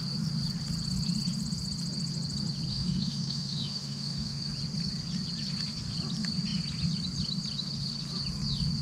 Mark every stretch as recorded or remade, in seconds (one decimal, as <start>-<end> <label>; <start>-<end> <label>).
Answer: 0.0-2.7 recorded; 2.7-4.5 remade; 4.5-8.8 recorded